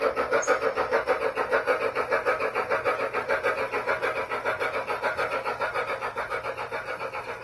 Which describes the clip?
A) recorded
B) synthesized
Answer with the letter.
A